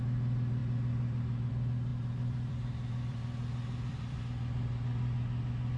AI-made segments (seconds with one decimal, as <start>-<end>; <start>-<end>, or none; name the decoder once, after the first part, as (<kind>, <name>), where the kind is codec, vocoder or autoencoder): 1.9-4.2 (vocoder, BigVGAN v2)